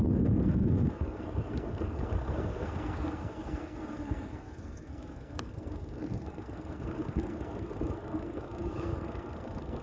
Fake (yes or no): yes